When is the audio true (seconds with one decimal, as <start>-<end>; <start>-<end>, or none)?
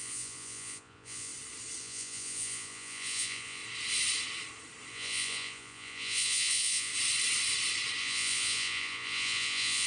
1.3-1.8; 3.6-4.9; 6.9-8.0